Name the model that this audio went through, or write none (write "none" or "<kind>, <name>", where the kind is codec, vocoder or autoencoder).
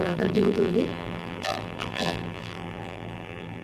vocoder, BigVGAN v2